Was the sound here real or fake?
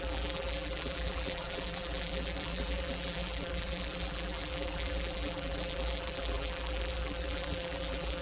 fake